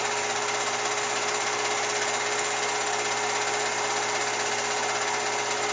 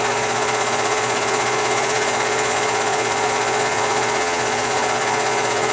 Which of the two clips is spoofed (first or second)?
second